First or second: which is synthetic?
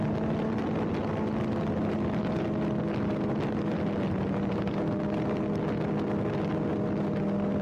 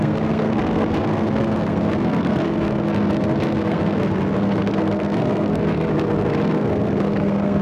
second